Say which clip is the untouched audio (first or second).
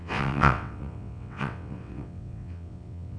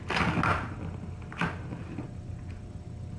second